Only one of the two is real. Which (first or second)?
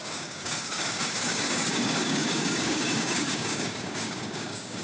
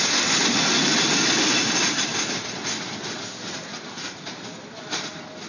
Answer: second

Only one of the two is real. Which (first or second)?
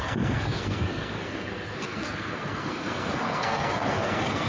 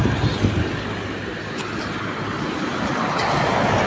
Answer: second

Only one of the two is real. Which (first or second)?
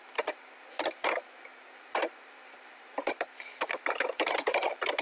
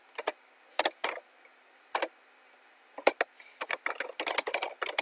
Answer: second